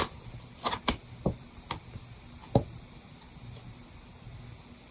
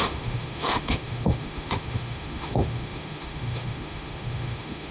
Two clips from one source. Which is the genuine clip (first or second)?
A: first